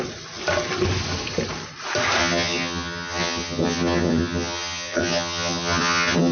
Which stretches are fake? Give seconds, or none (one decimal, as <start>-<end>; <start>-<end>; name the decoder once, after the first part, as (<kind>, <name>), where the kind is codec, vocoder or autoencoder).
2.2-6.3 (vocoder, HiFi-GAN)